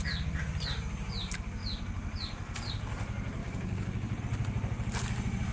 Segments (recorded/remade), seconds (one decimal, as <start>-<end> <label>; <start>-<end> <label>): 0.0-3.4 recorded; 3.4-4.2 remade; 4.2-5.5 recorded